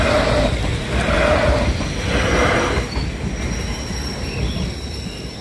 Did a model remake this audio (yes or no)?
no